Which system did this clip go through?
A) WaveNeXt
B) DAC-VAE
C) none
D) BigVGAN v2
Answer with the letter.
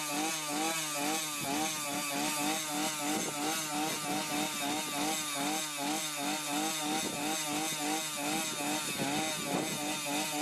C